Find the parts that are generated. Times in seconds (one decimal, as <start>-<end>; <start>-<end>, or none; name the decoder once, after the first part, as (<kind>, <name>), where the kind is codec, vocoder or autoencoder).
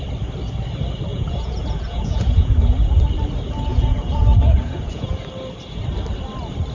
1.1-2.9 (vocoder, Vocos); 3.7-5.3